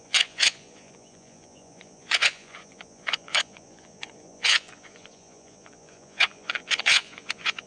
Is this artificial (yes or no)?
yes